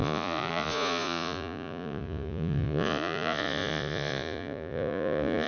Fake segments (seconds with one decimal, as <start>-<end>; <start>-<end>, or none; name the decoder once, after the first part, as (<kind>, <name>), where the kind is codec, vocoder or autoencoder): 0.0-5.5 (vocoder, Vocos)

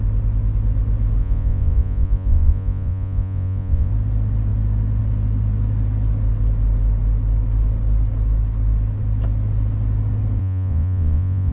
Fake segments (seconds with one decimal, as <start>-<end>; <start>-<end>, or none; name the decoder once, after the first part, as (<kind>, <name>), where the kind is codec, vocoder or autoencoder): 1.2-3.9 (vocoder, Vocos); 10.4-11.5

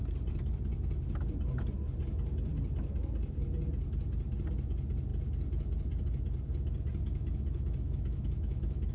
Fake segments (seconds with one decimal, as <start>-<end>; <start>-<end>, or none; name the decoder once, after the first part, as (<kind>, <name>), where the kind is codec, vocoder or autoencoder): 7.1-8.9 (autoencoder, DAC-VAE)

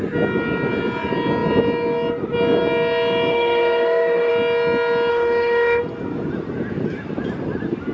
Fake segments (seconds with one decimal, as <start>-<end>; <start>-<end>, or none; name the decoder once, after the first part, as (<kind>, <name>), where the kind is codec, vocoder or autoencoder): 3.3-4.3 (autoencoder, DAC-VAE); 5.1-5.8

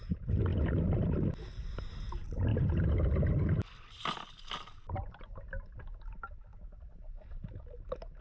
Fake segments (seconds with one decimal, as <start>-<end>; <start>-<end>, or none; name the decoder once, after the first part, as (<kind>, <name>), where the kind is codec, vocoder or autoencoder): none

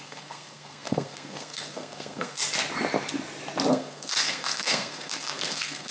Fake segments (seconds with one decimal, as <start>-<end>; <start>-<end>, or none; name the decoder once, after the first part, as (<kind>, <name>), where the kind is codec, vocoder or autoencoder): 0.0-2.4 (codec, SNAC); 3.7-5.9

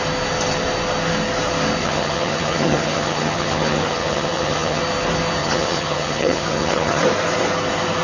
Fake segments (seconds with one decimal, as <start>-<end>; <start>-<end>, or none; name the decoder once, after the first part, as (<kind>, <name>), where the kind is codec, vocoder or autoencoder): 1.8-4.8 (vocoder, HiFi-GAN); 5.4-7.0

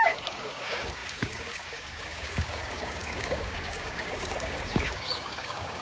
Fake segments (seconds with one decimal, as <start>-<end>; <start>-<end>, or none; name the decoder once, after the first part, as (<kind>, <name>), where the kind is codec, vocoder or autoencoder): 0.0-5.8 (codec, DAC)